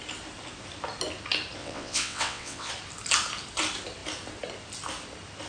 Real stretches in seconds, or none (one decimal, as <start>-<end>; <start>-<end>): 0.0-1.6; 2.7-5.5